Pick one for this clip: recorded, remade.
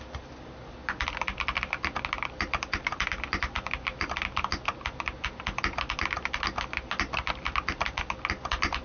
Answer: recorded